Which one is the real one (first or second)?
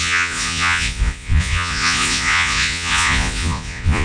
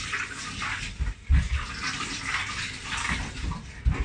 second